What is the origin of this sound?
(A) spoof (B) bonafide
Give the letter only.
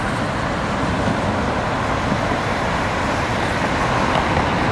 B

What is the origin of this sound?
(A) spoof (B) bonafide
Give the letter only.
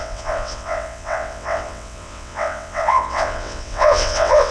A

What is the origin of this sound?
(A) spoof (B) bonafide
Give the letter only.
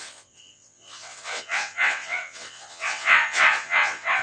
A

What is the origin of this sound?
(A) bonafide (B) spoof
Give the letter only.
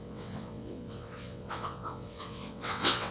B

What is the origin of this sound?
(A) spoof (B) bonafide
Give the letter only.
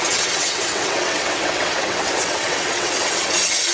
A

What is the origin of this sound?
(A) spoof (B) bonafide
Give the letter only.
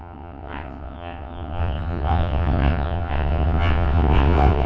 A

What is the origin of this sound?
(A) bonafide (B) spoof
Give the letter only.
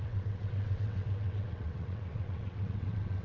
B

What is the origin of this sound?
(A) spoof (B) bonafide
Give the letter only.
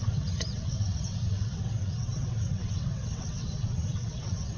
A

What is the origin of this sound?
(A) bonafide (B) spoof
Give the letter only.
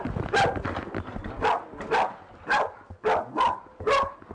A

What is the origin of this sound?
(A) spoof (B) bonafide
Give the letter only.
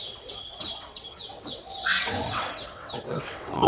A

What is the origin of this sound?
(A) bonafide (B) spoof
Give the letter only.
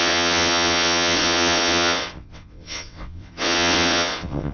B